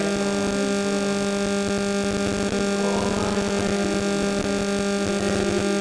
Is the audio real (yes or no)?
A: yes